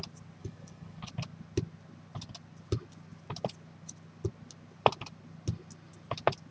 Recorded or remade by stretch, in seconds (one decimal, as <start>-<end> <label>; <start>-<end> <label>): 0.0-0.4 recorded; 0.4-1.0 remade; 1.0-6.5 recorded

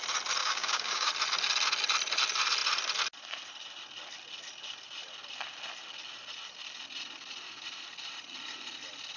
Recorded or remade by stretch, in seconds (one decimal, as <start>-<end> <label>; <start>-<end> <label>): 0.0-0.4 recorded; 0.4-1.1 remade; 1.1-9.2 recorded

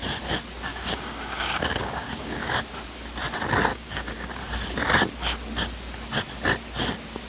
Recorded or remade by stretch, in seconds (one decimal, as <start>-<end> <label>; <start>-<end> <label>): 0.0-0.7 recorded; 0.7-2.6 remade; 2.6-3.7 recorded; 3.7-4.4 remade; 4.4-7.3 recorded